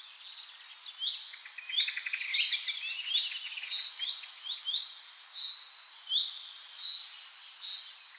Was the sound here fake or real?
real